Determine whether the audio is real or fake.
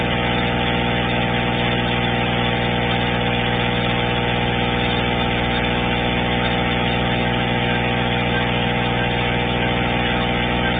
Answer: real